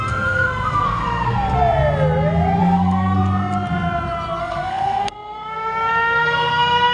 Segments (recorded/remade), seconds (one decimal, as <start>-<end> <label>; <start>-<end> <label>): 0.0-1.6 remade; 1.6-2.6 recorded; 2.6-3.2 remade; 3.2-4.4 recorded; 4.4-6.9 remade